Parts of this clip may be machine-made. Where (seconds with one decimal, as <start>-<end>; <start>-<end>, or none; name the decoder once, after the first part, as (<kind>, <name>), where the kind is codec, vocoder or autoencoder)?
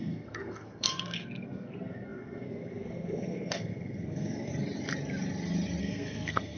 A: 0.0-4.5 (codec, SNAC); 5.8-6.6